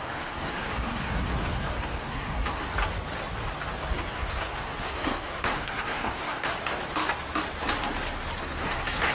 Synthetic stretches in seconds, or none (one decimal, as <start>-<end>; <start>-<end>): 0.0-2.7; 4.1-6.5; 8.4-9.1

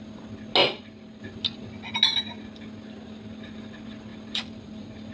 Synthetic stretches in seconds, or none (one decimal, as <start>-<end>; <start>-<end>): 0.6-1.2; 4.1-5.1

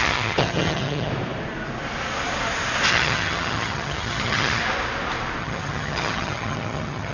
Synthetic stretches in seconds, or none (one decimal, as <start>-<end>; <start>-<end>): 0.0-1.1; 2.9-4.6; 5.4-7.1

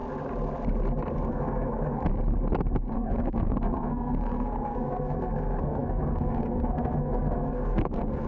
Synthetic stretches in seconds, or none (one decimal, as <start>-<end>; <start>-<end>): 1.3-2.0; 2.9-8.3

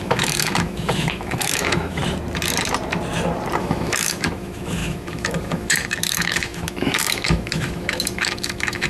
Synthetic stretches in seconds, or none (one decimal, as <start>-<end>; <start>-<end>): 0.0-2.0; 3.6-8.9

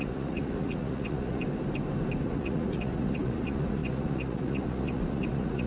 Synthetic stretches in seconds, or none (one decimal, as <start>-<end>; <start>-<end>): 0.0-1.4; 2.2-5.7

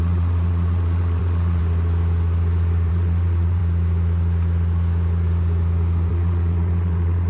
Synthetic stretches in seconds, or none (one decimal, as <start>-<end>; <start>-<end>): 0.0-1.6; 2.9-3.6; 6.1-7.3